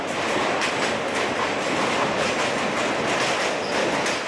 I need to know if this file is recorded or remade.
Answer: recorded